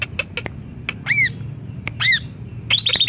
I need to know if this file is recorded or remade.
recorded